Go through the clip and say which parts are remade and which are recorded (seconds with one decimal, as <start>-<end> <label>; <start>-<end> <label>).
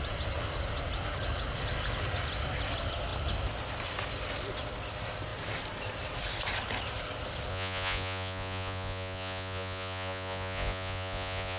0.0-7.5 recorded; 7.5-11.6 remade